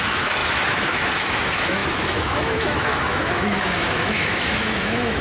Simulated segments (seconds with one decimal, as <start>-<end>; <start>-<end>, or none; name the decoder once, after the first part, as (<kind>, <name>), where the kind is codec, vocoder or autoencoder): 0.0-5.2 (autoencoder, DAC-VAE)